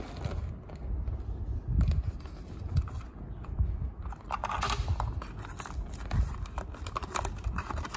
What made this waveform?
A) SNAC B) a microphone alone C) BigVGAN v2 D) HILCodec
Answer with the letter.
B